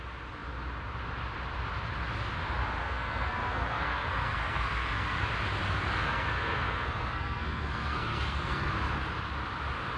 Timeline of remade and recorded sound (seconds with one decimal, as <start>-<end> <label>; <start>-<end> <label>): 0.0-2.8 recorded; 2.8-5.3 remade; 5.3-5.8 recorded; 5.8-8.7 remade; 8.7-10.0 recorded

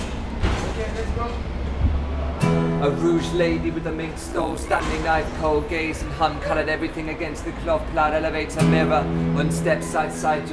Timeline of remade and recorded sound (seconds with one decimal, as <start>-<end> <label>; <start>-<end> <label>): 0.0-4.3 recorded; 4.3-4.8 remade; 4.8-10.5 recorded

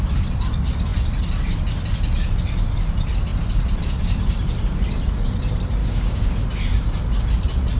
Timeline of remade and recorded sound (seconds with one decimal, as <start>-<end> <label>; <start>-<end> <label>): 0.0-5.8 recorded; 5.8-6.4 remade; 6.4-7.8 recorded

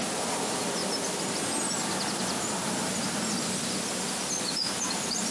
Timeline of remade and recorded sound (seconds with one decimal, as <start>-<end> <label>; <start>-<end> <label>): 0.0-5.3 recorded

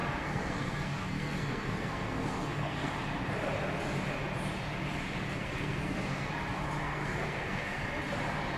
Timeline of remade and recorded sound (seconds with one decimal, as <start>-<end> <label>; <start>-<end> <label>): 0.0-2.9 remade; 2.9-5.3 recorded; 5.3-6.3 remade; 6.3-6.8 recorded; 6.8-7.8 remade; 7.8-8.6 recorded

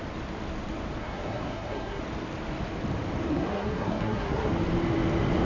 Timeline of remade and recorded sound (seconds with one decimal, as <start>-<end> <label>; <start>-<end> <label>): 0.0-1.0 recorded; 1.0-2.0 remade; 2.0-3.3 recorded; 3.3-4.5 remade; 4.5-5.4 recorded

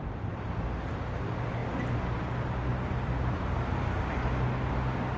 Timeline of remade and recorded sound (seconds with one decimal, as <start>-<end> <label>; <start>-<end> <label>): 0.0-5.2 recorded

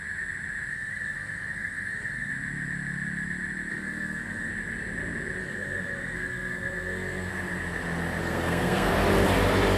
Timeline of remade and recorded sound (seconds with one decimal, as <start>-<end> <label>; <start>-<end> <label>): 0.0-0.7 recorded; 0.7-2.3 remade; 2.3-3.7 recorded; 3.7-4.5 remade; 4.5-5.4 recorded; 5.4-7.3 remade; 7.3-8.2 recorded; 8.2-8.9 remade; 8.9-9.8 recorded